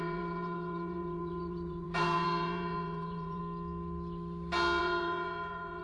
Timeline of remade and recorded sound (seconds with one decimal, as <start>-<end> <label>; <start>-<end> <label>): 0.0-3.4 remade; 3.4-4.8 recorded; 4.8-5.8 remade